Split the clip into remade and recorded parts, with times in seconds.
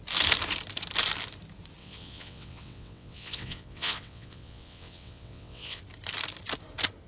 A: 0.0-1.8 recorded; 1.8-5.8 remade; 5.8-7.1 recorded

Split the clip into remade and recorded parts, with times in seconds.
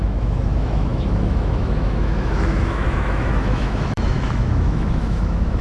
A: 0.0-5.6 remade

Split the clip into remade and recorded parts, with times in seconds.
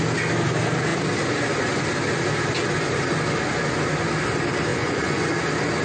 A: 0.0-4.7 recorded; 4.7-5.3 remade; 5.3-5.8 recorded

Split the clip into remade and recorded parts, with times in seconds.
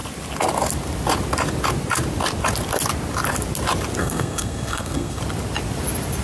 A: 0.0-4.0 recorded; 4.0-5.2 remade; 5.2-6.2 recorded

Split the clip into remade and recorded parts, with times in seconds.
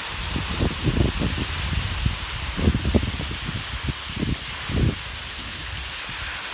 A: 0.0-6.5 recorded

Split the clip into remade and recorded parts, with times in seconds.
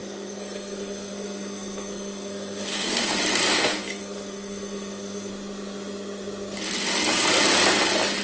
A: 0.0-3.1 remade; 3.1-3.5 recorded; 3.5-5.3 remade; 5.3-8.2 recorded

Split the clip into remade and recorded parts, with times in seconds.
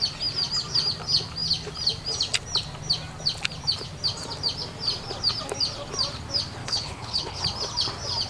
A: 0.0-6.6 recorded; 6.6-7.4 remade; 7.4-8.3 recorded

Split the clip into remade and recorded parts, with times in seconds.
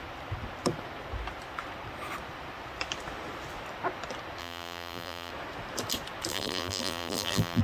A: 0.0-4.4 recorded; 4.4-5.3 remade; 5.3-6.3 recorded; 6.3-7.6 remade